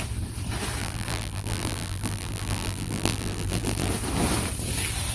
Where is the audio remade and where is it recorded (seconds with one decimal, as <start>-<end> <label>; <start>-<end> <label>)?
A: 0.0-0.8 recorded; 0.8-3.9 remade; 3.9-5.1 recorded